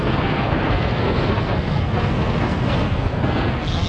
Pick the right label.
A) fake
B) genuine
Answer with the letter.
A